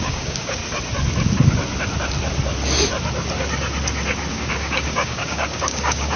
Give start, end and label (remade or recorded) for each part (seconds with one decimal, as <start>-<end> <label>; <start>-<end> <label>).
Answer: 0.0-0.6 remade; 0.6-4.3 recorded; 4.3-6.2 remade